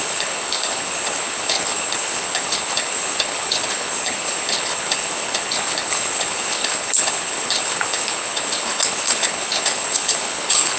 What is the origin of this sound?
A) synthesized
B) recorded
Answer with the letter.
A